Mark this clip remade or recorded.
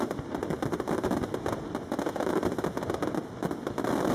recorded